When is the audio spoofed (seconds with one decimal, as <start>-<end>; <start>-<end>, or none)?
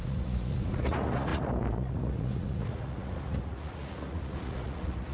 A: 0.0-5.1